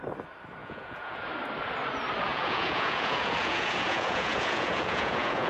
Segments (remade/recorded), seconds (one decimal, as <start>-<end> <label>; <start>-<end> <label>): 0.0-0.6 recorded; 0.6-1.3 remade; 1.3-2.3 recorded; 2.3-5.5 remade

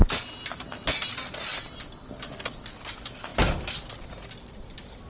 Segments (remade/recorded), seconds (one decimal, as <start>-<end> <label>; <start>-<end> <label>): 0.0-5.1 recorded

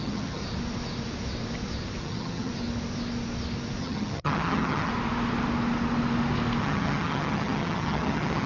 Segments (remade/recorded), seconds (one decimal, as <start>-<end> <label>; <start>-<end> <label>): 0.0-0.4 remade; 0.4-2.0 recorded; 2.0-2.5 remade; 2.5-3.8 recorded; 3.8-4.9 remade; 4.9-6.6 recorded; 6.6-8.5 remade

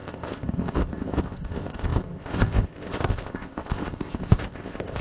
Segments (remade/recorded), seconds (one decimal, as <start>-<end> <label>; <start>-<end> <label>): 0.0-5.0 remade

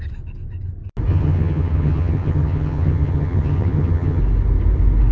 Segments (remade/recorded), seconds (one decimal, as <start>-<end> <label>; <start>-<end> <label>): 0.0-1.1 recorded; 1.1-4.2 remade; 4.2-5.1 recorded

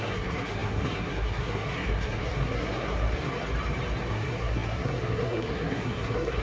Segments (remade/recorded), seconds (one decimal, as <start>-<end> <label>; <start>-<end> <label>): 0.0-3.3 remade; 3.3-4.1 recorded; 4.1-6.4 remade

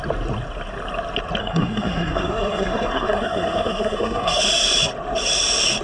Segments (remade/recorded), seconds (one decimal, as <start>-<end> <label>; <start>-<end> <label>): 0.0-1.4 recorded; 1.4-4.4 remade; 4.4-5.8 recorded